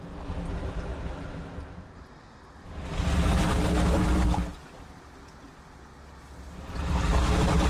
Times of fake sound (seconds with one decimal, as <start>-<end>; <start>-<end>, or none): none